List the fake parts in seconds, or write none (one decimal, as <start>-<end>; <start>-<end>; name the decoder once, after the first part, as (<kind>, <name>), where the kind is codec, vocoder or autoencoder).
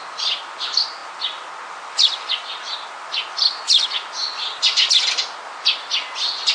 none